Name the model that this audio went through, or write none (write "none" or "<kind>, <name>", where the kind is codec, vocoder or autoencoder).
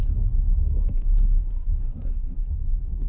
codec, SNAC